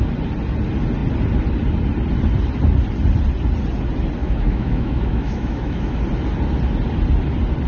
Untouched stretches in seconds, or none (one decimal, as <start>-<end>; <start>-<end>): 0.0-4.2; 6.0-7.7

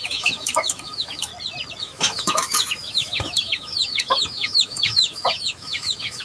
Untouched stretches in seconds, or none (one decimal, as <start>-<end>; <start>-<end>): 1.3-1.8

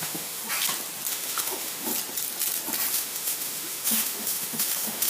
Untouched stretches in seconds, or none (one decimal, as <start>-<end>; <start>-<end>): 0.4-1.1; 1.9-2.9

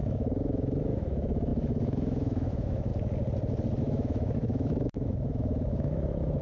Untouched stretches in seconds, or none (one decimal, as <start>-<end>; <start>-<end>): 2.9-3.8